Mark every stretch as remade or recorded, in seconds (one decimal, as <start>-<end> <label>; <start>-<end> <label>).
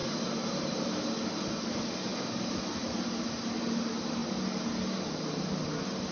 0.0-4.2 remade; 4.2-4.9 recorded; 4.9-6.1 remade